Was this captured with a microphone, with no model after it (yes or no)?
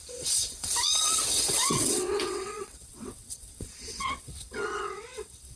no